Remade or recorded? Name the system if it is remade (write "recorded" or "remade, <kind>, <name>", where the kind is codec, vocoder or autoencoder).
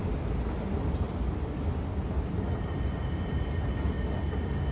recorded